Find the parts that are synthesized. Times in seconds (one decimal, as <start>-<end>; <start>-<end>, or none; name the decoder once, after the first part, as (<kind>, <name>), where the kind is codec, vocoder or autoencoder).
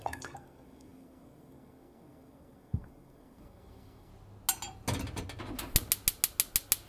0.0-4.1 (codec, SNAC)